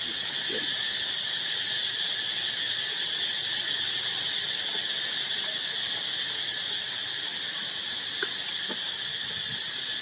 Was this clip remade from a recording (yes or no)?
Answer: no